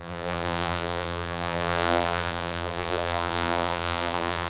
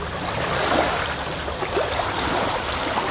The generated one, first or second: first